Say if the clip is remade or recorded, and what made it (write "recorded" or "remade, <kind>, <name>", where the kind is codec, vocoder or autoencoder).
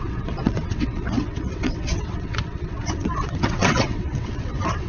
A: remade, vocoder, WaveNeXt